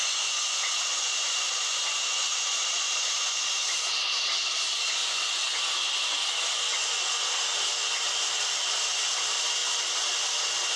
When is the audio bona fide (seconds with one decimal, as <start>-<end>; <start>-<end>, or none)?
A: 3.9-5.0; 5.6-10.8